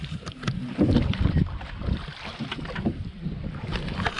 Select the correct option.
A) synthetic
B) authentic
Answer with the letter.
A